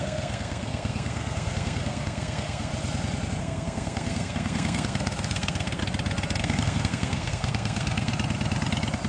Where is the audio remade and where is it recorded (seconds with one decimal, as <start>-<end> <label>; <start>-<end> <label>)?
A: 0.0-2.7 remade; 2.7-3.4 recorded; 3.4-5.8 remade; 5.8-6.4 recorded; 6.4-8.1 remade; 8.1-9.1 recorded